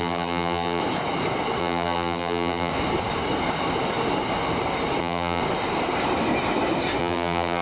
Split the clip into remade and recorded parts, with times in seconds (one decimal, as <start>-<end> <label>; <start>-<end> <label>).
0.0-0.8 remade; 0.8-1.6 recorded; 1.6-2.7 remade; 2.7-5.0 recorded; 5.0-5.4 remade; 5.4-7.0 recorded; 7.0-7.6 remade